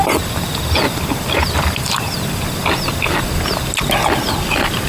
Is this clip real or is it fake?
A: real